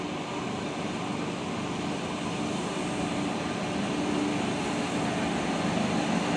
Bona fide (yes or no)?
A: yes